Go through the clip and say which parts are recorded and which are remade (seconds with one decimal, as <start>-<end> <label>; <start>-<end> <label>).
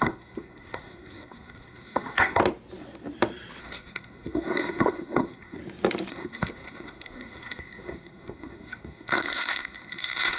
0.0-2.4 remade; 2.4-3.6 recorded; 3.6-5.6 remade; 5.6-6.1 recorded; 6.1-10.4 remade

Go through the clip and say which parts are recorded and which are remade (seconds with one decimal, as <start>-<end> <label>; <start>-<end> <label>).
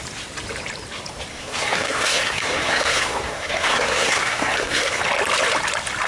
0.0-1.3 recorded; 1.3-5.0 remade; 5.0-6.1 recorded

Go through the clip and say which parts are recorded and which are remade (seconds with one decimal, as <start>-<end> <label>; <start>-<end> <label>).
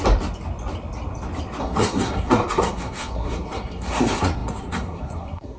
0.0-1.6 recorded; 1.6-5.6 remade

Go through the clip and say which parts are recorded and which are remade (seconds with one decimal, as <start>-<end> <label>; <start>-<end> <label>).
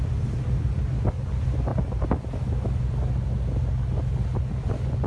0.0-5.1 recorded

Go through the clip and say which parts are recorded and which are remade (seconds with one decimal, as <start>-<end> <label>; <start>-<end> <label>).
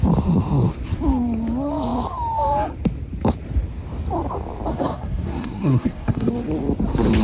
0.0-4.7 recorded; 4.7-6.3 remade; 6.3-7.2 recorded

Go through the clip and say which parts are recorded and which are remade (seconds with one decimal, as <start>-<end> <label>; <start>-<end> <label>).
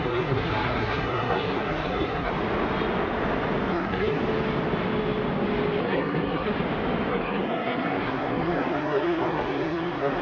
0.0-2.3 remade; 2.3-3.7 recorded; 3.7-4.2 remade; 4.2-5.8 recorded; 5.8-6.5 remade; 6.5-7.1 recorded; 7.1-10.2 remade